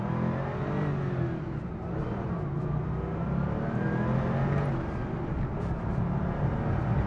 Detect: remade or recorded recorded